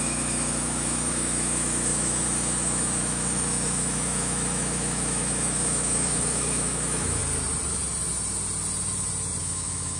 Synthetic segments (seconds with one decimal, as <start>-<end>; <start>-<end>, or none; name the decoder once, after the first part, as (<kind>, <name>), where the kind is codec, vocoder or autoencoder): 0.0-7.2 (autoencoder, DAC-VAE); 9.4-10.0